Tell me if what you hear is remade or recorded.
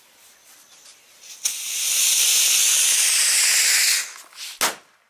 recorded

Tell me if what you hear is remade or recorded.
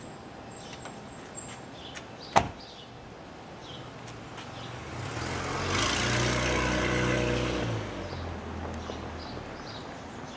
recorded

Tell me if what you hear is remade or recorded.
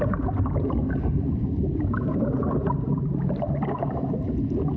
remade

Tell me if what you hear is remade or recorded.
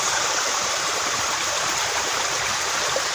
remade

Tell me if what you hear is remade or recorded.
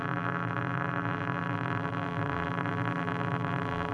remade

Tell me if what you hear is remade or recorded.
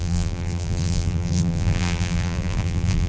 remade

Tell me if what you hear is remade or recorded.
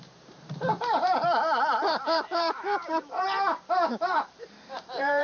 remade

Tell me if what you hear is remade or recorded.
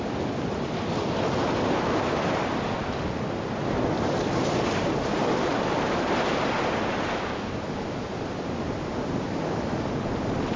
recorded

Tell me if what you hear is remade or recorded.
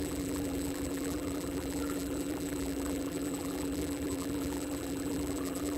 remade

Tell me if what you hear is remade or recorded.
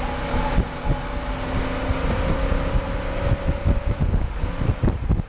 recorded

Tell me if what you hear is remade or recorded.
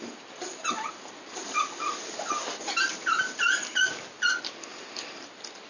remade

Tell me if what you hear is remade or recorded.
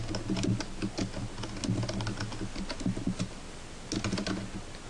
recorded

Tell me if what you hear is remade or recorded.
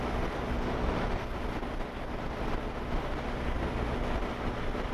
recorded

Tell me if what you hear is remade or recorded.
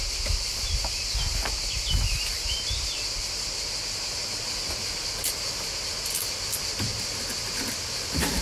recorded